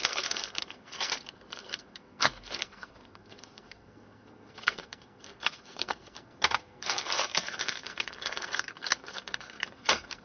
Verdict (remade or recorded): remade